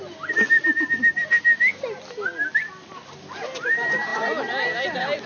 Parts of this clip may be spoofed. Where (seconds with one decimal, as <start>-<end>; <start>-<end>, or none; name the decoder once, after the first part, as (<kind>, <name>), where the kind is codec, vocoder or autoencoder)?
none